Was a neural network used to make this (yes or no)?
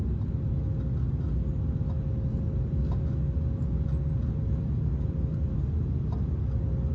no